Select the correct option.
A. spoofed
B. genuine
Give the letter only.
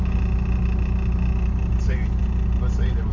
B